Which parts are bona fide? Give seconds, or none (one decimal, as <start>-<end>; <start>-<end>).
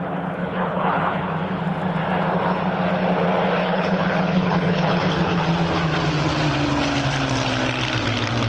0.0-0.4; 1.2-3.6; 5.4-8.5